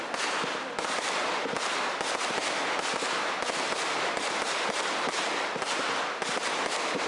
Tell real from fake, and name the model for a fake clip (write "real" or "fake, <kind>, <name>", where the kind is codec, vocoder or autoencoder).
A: real